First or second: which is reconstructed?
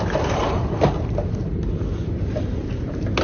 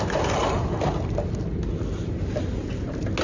first